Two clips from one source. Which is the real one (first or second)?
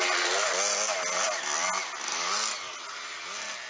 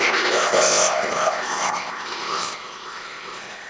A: first